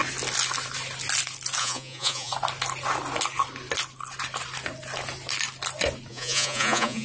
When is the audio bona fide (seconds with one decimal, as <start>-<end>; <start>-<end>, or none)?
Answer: 0.0-1.6; 2.3-6.1